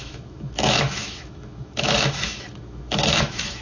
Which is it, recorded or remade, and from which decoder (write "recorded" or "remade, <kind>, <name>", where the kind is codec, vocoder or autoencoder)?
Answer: remade, autoencoder, DAC-VAE